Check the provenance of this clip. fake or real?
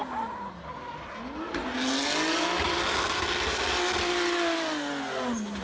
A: real